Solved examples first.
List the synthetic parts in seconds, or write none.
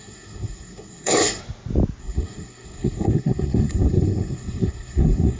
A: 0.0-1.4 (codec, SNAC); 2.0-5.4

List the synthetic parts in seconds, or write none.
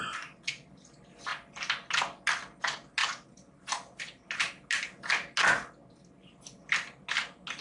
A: none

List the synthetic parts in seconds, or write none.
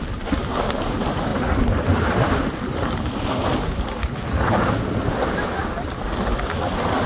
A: none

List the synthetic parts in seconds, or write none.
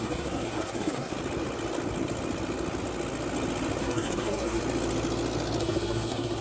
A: 0.0-1.1 (codec, SNAC); 3.8-4.6; 5.6-6.4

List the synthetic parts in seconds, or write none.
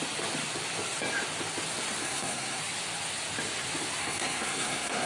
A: 2.0-2.6 (codec, SNAC); 4.0-5.1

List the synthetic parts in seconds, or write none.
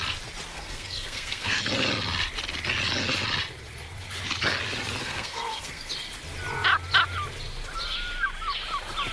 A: 0.5-1.6 (codec, SNAC); 5.0-5.9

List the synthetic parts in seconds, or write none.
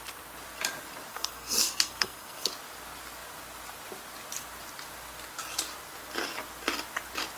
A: 1.1-2.5 (codec, SNAC)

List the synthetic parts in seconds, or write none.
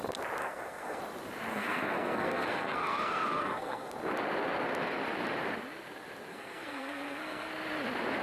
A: 0.4-1.0 (codec, SNAC); 1.5-3.9; 6.3-7.5